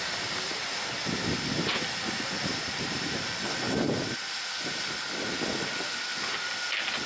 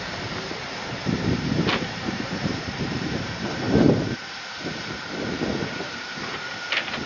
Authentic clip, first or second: first